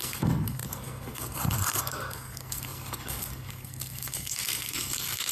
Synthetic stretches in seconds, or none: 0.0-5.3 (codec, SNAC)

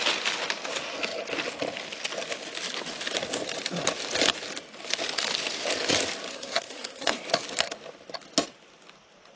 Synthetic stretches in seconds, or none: 6.3-7.2 (codec, SNAC)

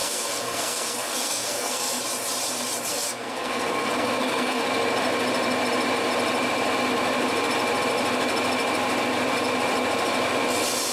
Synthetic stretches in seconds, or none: 0.0-2.0 (codec, SNAC); 2.9-4.6

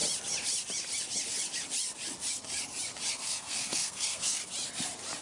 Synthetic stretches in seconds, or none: 3.1-4.4 (codec, SNAC)

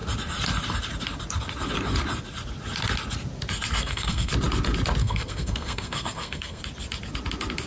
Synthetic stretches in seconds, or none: 3.8-4.3 (codec, SNAC); 5.0-6.6